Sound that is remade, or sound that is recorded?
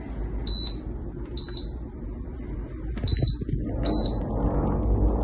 recorded